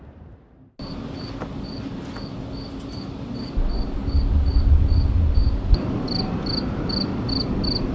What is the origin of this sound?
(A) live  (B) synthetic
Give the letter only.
A